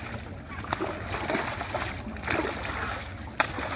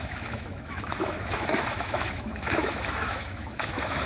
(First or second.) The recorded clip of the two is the first